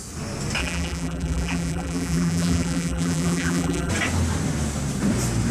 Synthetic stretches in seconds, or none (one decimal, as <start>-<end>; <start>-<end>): 0.6-3.9